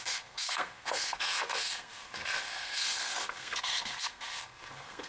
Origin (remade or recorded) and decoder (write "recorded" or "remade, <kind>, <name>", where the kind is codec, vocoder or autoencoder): remade, codec, SNAC